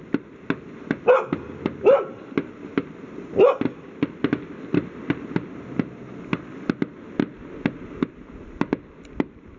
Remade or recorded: recorded